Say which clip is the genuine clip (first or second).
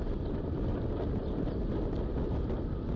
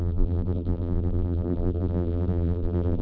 first